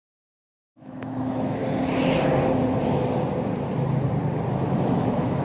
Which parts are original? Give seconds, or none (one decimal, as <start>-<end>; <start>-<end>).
1.6-4.8

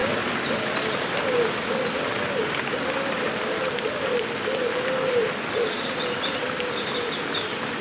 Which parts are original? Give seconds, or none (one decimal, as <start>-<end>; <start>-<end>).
0.0-7.8

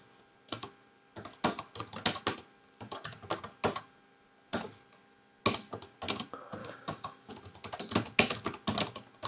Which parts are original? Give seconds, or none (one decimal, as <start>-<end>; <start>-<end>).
0.0-6.6; 7.3-9.3

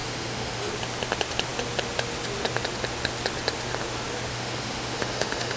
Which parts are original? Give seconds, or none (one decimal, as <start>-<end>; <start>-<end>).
0.7-4.3

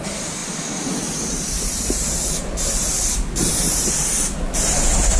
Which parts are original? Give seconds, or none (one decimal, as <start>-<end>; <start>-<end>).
0.0-5.2

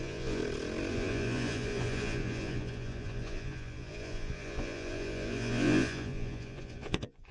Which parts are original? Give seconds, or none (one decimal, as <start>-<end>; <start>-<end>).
0.4-0.9